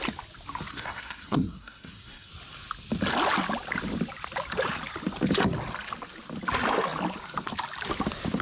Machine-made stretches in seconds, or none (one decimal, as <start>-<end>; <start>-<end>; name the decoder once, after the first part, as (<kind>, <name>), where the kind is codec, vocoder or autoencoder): 0.7-2.3 (codec, SNAC)